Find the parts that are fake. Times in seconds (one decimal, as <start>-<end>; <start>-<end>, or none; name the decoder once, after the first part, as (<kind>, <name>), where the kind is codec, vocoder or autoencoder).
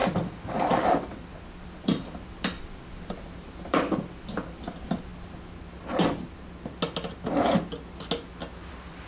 0.0-5.1 (vocoder, BigVGAN v2); 8.7-9.1